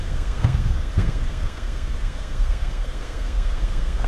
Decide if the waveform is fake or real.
fake